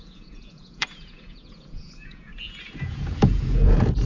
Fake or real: fake